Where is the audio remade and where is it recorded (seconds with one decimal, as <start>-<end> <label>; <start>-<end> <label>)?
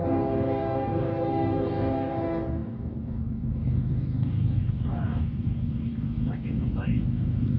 0.0-7.6 remade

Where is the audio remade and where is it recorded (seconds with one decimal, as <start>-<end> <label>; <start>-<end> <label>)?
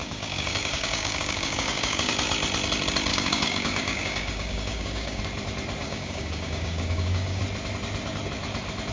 0.0-2.1 remade; 2.1-3.1 recorded; 3.1-5.2 remade; 5.2-5.8 recorded; 5.8-7.4 remade; 7.4-8.9 recorded